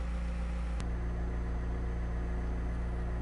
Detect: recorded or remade recorded